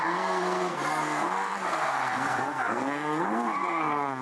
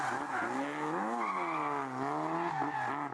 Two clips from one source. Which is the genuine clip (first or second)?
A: second